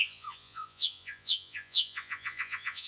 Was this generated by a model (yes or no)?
yes